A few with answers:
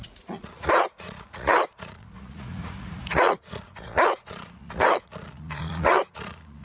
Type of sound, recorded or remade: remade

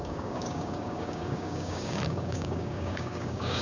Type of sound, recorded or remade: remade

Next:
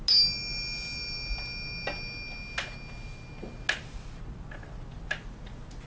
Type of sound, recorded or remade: recorded